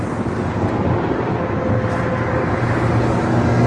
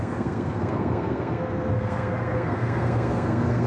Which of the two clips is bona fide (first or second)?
first